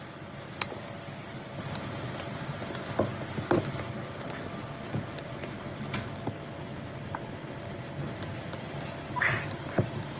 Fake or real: real